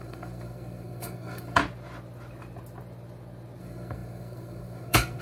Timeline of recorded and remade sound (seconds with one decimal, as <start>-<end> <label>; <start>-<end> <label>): 0.0-1.6 remade; 1.6-3.6 recorded; 3.6-5.2 remade